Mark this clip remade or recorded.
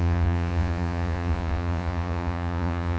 remade